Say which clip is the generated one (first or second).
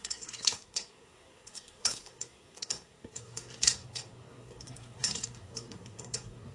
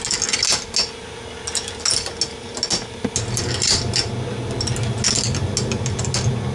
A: first